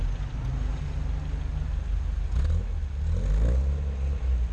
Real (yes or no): yes